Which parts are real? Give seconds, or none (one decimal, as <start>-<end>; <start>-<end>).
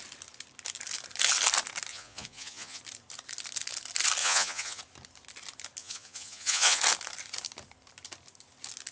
0.0-1.9; 2.8-4.2; 4.8-5.8; 6.8-8.9